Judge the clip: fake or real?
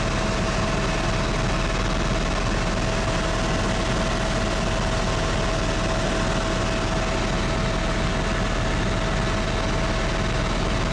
real